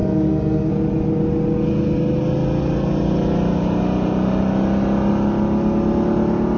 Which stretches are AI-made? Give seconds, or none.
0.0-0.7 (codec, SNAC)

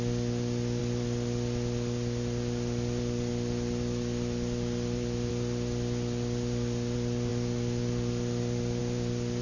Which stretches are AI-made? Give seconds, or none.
none

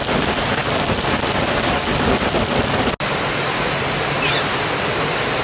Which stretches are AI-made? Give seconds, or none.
none

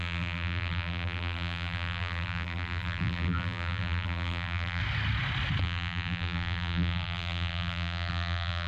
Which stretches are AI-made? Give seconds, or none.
0.0-4.8 (vocoder, BigVGAN v2); 5.6-8.7

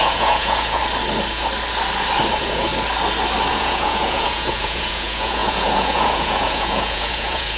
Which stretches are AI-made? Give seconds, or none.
0.0-0.8 (vocoder, Vocos); 2.3-2.7; 3.5-7.6